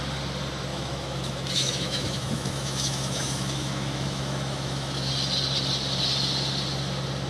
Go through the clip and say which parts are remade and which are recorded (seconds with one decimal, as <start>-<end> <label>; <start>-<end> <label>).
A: 0.0-0.7 recorded; 0.7-5.1 remade; 5.1-7.3 recorded